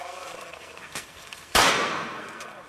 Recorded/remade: remade